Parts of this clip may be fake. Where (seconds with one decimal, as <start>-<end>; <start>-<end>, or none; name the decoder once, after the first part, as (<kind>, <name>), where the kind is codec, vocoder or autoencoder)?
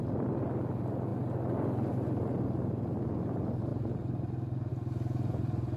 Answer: none